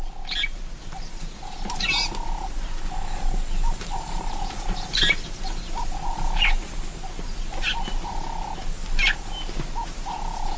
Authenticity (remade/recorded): recorded